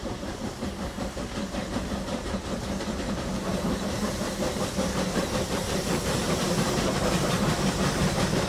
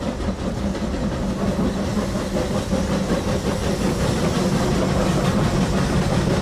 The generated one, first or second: first